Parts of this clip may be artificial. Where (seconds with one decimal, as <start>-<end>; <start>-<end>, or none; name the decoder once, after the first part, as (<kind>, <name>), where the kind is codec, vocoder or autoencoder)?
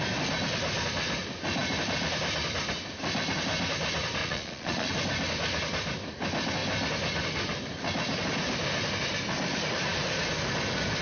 4.2-4.9 (vocoder, Vocos)